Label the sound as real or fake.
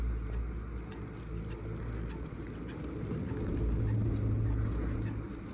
real